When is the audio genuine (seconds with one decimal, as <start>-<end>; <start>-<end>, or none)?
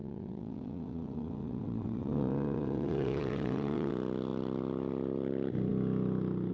3.9-6.5